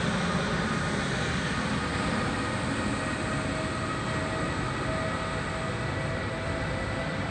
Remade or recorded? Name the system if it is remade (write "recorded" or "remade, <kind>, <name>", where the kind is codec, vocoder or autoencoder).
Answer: recorded